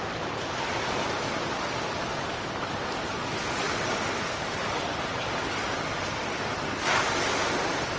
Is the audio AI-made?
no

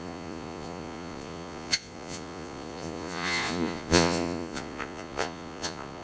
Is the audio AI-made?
yes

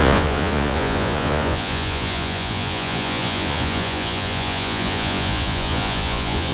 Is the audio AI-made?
yes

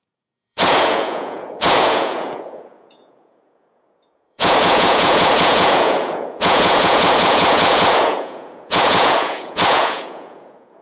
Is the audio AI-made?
yes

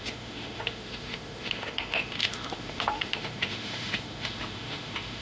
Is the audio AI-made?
yes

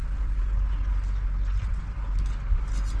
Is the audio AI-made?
no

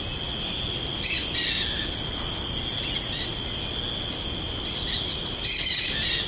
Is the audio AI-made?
no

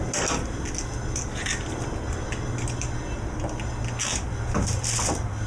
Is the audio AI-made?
no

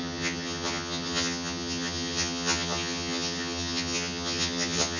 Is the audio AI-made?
yes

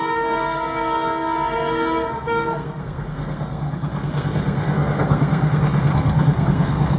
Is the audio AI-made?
yes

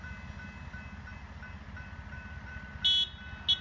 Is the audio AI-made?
no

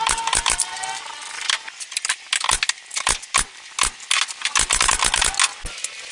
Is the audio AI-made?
no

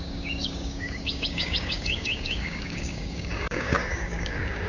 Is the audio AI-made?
yes